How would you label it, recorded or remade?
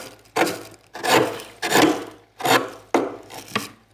recorded